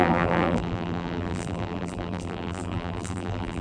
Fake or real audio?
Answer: fake